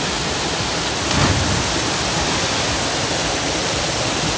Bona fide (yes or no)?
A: yes